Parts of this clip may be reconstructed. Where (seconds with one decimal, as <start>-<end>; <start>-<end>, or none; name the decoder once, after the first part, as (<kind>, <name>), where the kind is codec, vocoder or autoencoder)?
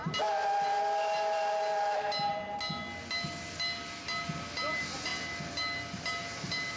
none